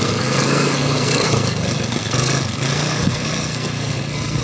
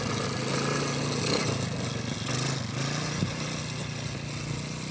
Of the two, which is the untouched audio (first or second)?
second